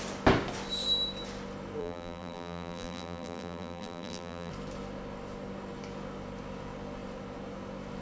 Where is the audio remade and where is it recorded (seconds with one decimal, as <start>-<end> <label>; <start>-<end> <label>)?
0.0-1.8 recorded; 1.8-4.5 remade; 4.5-8.0 recorded